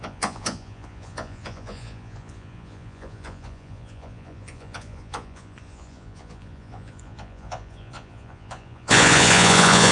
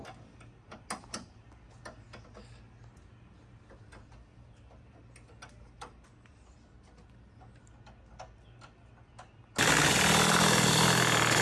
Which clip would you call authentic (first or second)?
second